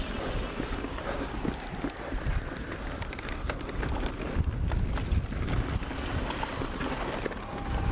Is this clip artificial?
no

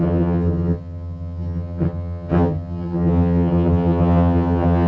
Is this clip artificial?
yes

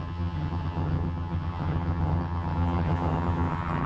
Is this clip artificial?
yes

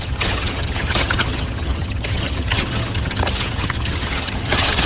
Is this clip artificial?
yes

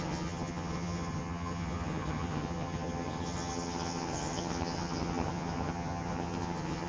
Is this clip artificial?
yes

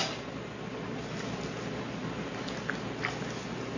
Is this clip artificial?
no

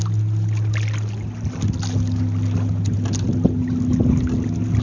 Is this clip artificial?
no